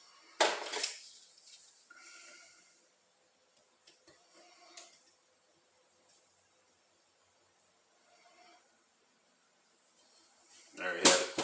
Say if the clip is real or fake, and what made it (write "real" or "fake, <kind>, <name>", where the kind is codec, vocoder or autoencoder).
real